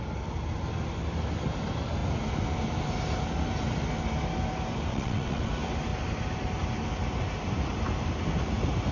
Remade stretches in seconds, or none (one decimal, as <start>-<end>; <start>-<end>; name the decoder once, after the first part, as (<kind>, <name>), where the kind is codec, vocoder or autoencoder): 4.9-5.5 (vocoder, WaveNeXt)